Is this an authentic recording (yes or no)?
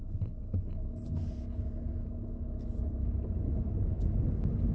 yes